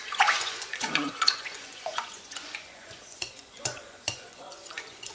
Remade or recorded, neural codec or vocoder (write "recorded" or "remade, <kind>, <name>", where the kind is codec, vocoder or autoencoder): remade, vocoder, Vocos